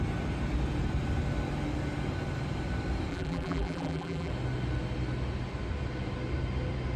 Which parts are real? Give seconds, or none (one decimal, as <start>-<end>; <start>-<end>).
0.0-3.1; 4.3-7.0